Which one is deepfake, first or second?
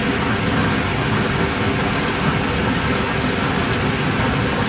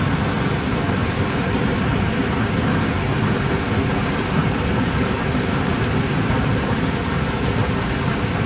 second